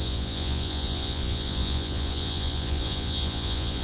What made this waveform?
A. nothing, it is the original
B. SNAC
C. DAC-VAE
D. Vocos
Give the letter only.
D